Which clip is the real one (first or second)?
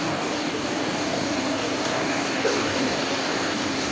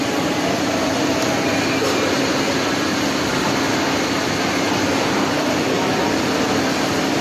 second